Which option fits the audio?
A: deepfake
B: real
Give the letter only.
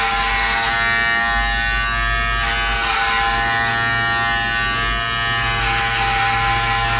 B